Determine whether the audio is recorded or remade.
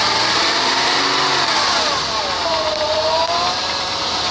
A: recorded